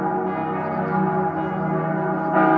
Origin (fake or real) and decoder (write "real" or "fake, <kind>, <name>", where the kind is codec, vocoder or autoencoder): real